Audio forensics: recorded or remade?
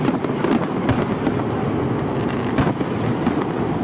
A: recorded